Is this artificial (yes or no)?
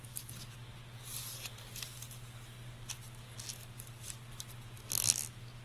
no